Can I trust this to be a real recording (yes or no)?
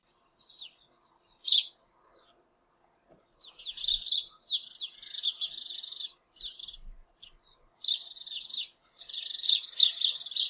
yes